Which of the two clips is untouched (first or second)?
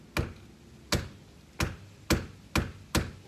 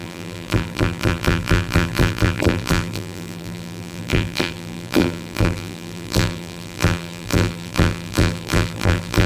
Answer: first